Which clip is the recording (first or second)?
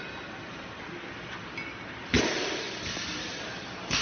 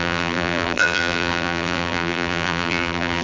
first